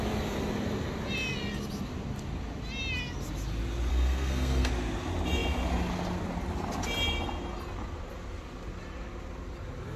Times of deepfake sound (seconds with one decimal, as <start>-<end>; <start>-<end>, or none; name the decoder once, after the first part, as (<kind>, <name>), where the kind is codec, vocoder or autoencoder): 3.9-4.7 (codec, SNAC)